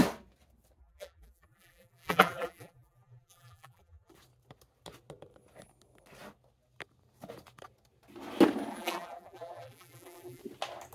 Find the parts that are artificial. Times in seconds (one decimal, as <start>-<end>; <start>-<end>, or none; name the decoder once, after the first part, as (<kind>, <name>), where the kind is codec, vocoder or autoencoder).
0.8-4.1 (vocoder, BigVGAN v2); 8.7-10.4